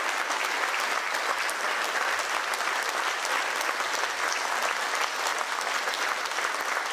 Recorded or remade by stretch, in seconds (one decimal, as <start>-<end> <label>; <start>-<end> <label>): 0.0-6.9 recorded